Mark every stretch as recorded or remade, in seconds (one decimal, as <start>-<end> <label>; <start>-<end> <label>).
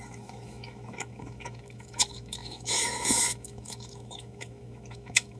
0.0-5.4 remade